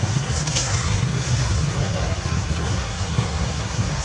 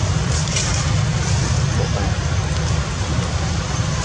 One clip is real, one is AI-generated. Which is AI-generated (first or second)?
first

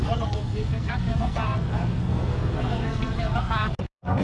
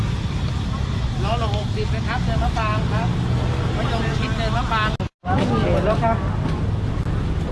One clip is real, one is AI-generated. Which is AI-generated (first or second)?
first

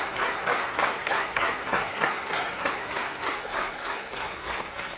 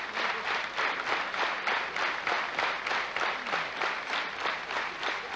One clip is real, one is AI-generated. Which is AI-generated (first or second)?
first